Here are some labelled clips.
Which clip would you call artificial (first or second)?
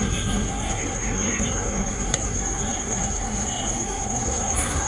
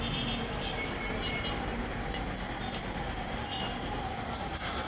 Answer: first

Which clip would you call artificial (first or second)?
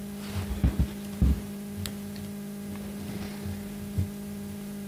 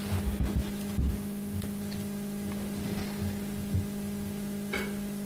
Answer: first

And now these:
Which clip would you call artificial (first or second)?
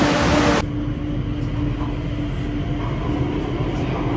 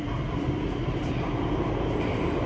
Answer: second